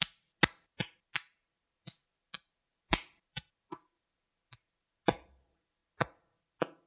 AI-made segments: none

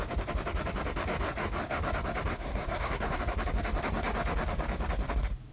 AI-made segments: 2.3-3.2 (codec, SNAC)

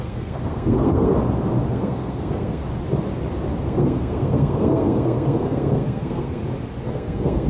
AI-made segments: 0.0-1.1 (codec, SNAC); 1.7-2.6; 3.6-6.4; 6.9-7.5

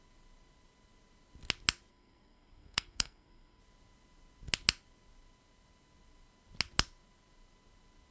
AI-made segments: 1.9-3.6 (codec, SNAC)

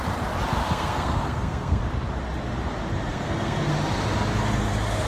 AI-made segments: 0.6-1.8 (codec, SNAC); 3.1-3.7

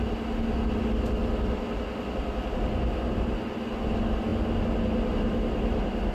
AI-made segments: none

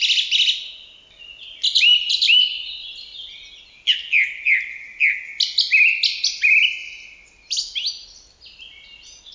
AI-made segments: none